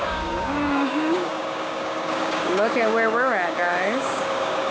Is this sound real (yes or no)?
no